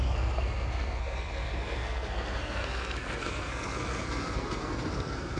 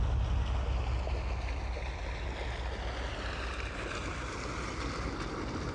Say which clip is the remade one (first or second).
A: first